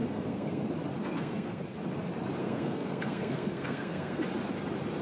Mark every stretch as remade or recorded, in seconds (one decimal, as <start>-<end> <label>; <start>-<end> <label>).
0.0-0.6 remade; 0.6-1.0 recorded; 1.0-1.6 remade; 1.6-2.4 recorded; 2.4-4.2 remade; 4.2-5.0 recorded

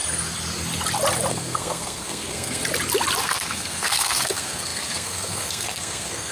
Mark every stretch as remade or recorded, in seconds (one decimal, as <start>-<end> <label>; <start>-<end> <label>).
0.0-1.3 recorded; 1.3-2.6 remade; 2.6-3.2 recorded; 3.2-6.3 remade

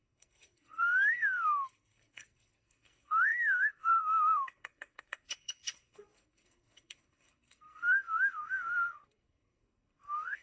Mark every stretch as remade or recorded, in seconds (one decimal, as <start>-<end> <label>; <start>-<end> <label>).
0.0-10.4 remade

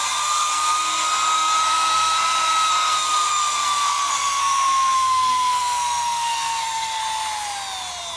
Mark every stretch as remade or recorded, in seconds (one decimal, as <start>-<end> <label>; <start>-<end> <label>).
0.0-7.0 remade; 7.0-8.2 recorded

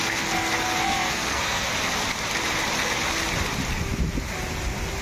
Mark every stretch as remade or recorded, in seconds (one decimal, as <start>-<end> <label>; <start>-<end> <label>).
0.0-1.7 remade; 1.7-5.0 recorded

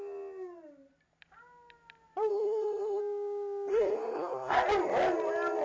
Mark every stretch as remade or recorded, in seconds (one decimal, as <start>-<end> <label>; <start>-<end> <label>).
0.0-2.3 recorded; 2.3-3.0 remade; 3.0-3.7 recorded; 3.7-4.6 remade; 4.6-5.6 recorded